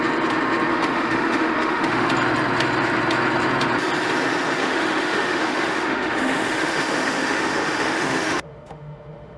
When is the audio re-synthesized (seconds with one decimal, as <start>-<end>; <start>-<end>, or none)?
0.7-2.1; 4.6-9.4